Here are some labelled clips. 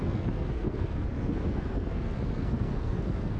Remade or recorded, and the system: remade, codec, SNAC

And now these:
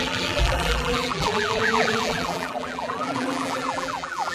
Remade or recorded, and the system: remade, vocoder, BigVGAN v2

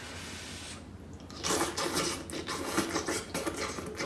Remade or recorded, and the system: recorded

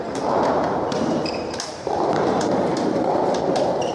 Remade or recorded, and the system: remade, vocoder, BigVGAN v2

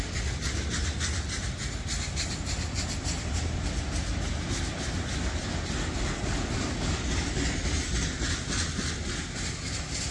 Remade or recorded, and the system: recorded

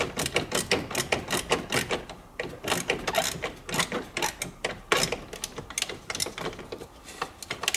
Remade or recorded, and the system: recorded